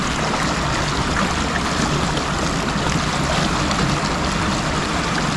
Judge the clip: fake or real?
real